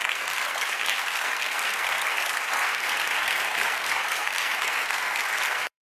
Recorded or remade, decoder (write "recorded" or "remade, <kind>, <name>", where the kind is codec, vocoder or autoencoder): remade, codec, SNAC